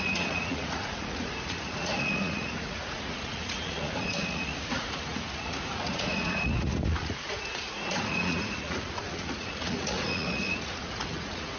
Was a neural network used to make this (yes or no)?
yes